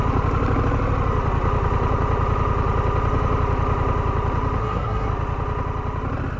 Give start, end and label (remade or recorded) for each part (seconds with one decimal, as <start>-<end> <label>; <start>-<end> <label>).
0.0-4.6 recorded; 4.6-5.1 remade; 5.1-6.4 recorded